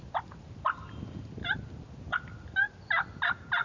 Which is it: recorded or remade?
recorded